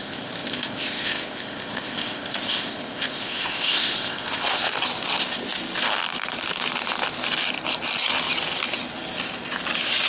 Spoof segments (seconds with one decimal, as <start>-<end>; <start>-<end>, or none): 0.0-4.6